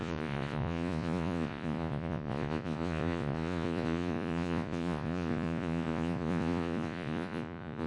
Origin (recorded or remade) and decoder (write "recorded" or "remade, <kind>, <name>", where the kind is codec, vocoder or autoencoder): remade, vocoder, Vocos